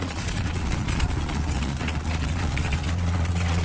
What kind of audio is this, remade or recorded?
remade